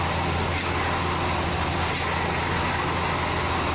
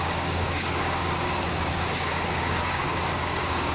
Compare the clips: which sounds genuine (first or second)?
first